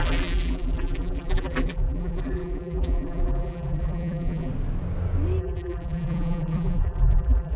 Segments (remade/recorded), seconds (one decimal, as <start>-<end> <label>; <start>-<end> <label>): 0.0-4.5 remade; 4.5-5.4 recorded; 5.4-7.6 remade